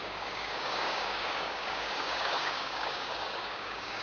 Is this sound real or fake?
fake